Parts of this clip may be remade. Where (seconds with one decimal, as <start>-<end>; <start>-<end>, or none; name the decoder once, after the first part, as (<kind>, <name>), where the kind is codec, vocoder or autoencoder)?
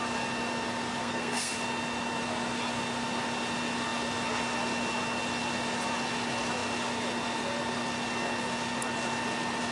1.0-1.5 (codec, SNAC)